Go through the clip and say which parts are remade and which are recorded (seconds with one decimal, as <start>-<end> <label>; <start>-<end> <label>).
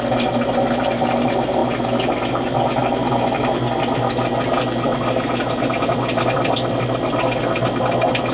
0.0-8.3 recorded